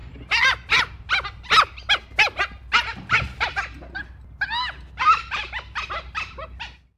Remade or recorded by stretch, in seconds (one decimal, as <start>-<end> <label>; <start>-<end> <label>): 0.0-7.0 recorded